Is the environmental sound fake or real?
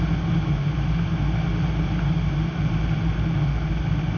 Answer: real